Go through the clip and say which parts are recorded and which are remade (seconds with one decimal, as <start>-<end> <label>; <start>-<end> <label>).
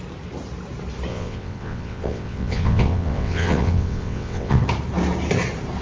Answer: 0.0-1.1 recorded; 1.1-4.6 remade; 4.6-5.8 recorded